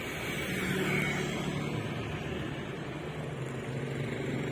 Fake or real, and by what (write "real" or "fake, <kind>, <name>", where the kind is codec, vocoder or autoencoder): real